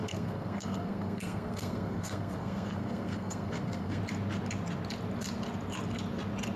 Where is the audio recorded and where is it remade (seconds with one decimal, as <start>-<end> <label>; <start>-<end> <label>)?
0.0-4.0 remade; 4.0-6.6 recorded